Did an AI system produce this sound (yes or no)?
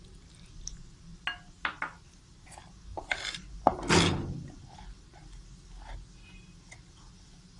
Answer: no